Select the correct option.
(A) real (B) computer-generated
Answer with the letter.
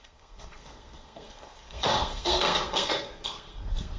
B